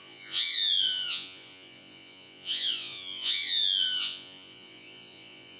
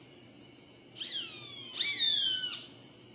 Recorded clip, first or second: second